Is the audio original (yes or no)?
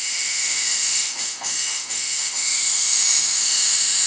no